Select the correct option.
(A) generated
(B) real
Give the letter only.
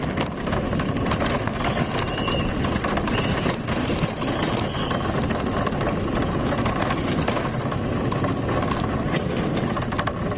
B